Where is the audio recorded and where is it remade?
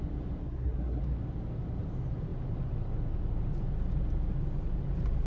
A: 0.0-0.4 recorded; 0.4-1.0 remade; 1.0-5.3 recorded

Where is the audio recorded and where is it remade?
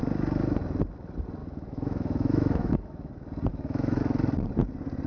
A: 0.0-1.4 recorded; 1.4-3.1 remade; 3.1-3.5 recorded; 3.5-4.0 remade; 4.0-5.1 recorded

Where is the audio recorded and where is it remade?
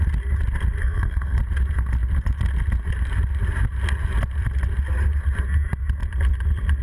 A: 0.0-0.8 recorded; 0.8-1.4 remade; 1.4-6.8 recorded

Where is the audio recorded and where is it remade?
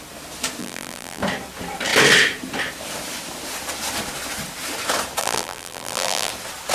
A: 0.0-0.6 recorded; 0.6-1.2 remade; 1.2-5.2 recorded; 5.2-6.3 remade; 6.3-6.7 recorded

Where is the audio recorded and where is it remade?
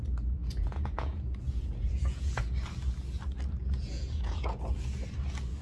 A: 0.0-0.4 recorded; 0.4-2.4 remade; 2.4-3.6 recorded; 3.6-4.6 remade; 4.6-5.6 recorded